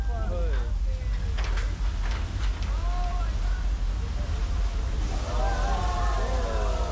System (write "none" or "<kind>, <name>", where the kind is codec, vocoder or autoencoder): none